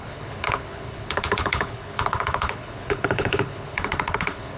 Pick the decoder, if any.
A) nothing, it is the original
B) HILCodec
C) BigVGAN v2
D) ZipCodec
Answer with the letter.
B